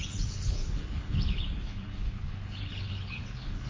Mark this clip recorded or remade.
remade